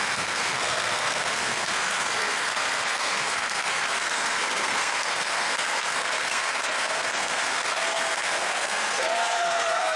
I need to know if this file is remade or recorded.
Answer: remade